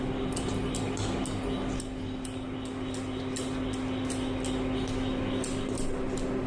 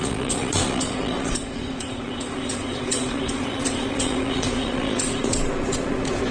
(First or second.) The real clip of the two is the first